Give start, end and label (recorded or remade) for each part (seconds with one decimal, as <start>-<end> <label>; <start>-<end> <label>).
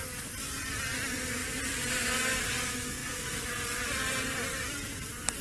0.0-1.4 recorded; 1.4-1.9 remade; 1.9-3.0 recorded; 3.0-5.4 remade